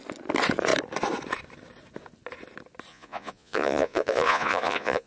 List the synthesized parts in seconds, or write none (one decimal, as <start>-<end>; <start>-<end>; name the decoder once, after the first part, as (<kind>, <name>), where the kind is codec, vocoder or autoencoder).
2.9-5.1 (vocoder, Vocos)